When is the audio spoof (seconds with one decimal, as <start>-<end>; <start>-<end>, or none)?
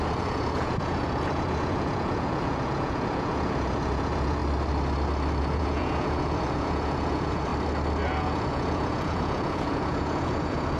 0.0-4.4; 5.4-7.5; 8.2-10.8